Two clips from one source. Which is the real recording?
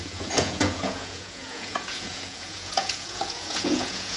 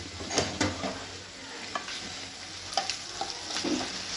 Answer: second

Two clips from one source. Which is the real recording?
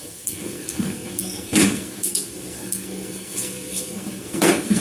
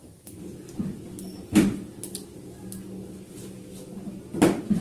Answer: second